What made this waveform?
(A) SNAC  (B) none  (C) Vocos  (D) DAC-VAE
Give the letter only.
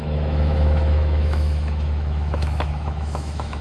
D